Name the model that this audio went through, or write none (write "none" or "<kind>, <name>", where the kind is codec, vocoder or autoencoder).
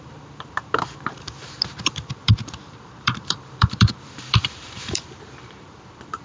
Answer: vocoder, BigVGAN v2